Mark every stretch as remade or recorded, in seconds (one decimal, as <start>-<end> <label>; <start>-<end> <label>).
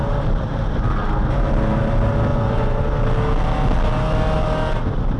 0.0-2.3 recorded; 2.3-2.8 remade; 2.8-5.2 recorded